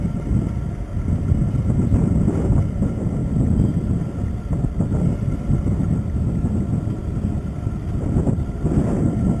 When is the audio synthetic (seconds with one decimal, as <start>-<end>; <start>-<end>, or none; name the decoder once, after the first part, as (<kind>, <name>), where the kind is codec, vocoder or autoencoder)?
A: none